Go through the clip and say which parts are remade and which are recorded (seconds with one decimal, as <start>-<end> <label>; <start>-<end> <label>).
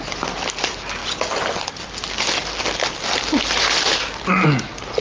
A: 0.0-5.0 recorded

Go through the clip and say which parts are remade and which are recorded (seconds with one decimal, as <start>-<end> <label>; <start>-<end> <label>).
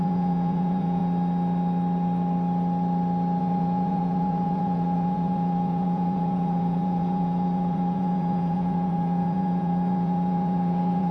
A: 0.0-1.0 remade; 1.0-3.4 recorded; 3.4-11.1 remade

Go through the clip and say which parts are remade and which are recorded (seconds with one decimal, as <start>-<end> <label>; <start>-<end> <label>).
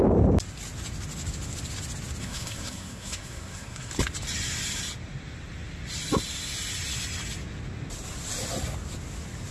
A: 0.0-2.2 recorded; 2.2-3.9 remade; 3.9-9.5 recorded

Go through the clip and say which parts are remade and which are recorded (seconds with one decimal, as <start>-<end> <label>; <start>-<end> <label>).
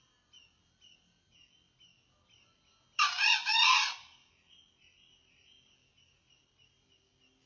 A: 0.0-7.5 recorded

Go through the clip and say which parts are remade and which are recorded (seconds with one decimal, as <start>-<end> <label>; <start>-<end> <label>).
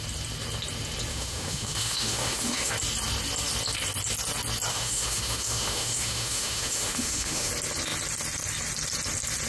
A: 0.0-1.1 recorded; 1.1-2.7 remade; 2.7-4.7 recorded; 4.7-7.5 remade; 7.5-9.5 recorded